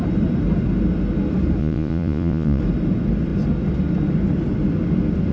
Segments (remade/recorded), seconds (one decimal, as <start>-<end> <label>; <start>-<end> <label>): 0.0-1.6 recorded; 1.6-2.6 remade; 2.6-5.3 recorded